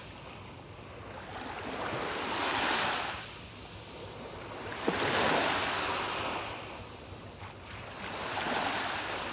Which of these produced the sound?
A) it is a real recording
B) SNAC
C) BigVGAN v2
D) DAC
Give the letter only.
A